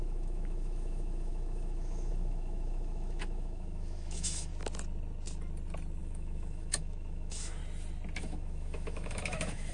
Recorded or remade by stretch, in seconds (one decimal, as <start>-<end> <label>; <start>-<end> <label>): 0.0-4.5 remade; 4.5-6.0 recorded; 6.0-7.6 remade; 7.6-8.2 recorded; 8.2-9.7 remade